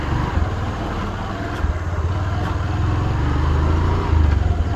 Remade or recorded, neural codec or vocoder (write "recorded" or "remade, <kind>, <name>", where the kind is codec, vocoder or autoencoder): recorded